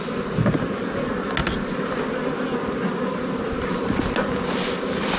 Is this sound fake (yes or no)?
no